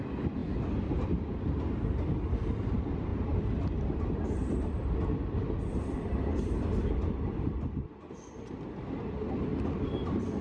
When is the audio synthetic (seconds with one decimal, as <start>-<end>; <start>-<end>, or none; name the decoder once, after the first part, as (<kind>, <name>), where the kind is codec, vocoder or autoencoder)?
none